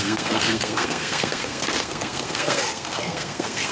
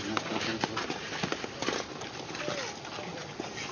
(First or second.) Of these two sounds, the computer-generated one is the first